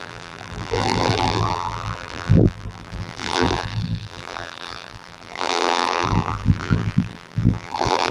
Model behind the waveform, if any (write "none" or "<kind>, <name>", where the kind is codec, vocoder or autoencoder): vocoder, BigVGAN v2